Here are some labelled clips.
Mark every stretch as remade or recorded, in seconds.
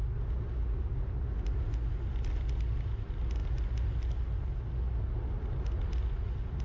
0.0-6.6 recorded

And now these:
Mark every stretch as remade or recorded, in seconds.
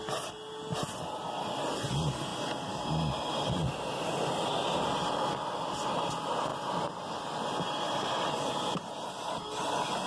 0.0-10.1 recorded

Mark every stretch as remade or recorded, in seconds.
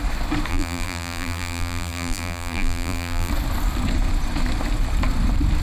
0.0-0.5 recorded; 0.5-3.3 remade; 3.3-5.6 recorded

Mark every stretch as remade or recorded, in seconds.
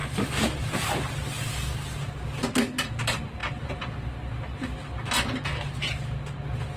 0.0-1.3 remade; 1.3-6.8 recorded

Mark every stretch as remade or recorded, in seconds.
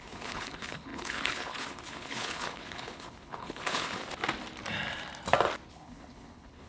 0.0-4.0 remade; 4.0-5.7 recorded; 5.7-6.7 remade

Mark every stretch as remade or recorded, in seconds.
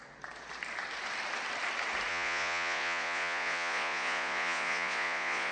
0.0-2.1 recorded; 2.1-5.5 remade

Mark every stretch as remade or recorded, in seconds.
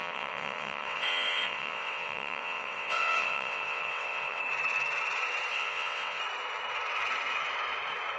0.0-4.4 remade; 4.4-5.5 recorded; 5.5-6.2 remade; 6.2-8.2 recorded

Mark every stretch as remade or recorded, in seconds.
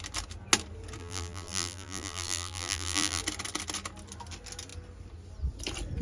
0.0-1.0 recorded; 1.0-3.2 remade; 3.2-6.0 recorded